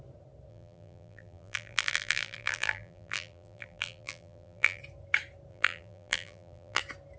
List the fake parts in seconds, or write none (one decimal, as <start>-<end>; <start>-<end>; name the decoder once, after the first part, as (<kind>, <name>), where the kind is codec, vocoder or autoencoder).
0.5-4.8 (vocoder, BigVGAN v2); 5.5-6.8